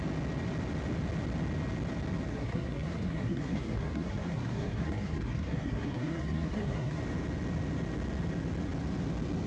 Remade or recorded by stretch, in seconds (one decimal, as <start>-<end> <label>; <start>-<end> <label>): 0.0-2.3 recorded; 2.3-7.0 remade; 7.0-9.5 recorded